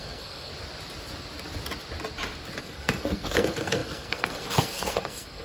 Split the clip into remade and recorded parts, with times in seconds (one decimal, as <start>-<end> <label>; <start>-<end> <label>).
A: 0.0-0.5 remade; 0.5-2.6 recorded; 2.6-5.4 remade